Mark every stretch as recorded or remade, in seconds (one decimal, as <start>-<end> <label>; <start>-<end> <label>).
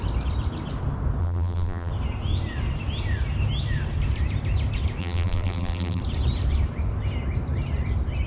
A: 0.0-1.2 recorded; 1.2-1.9 remade; 1.9-5.0 recorded; 5.0-6.0 remade; 6.0-8.3 recorded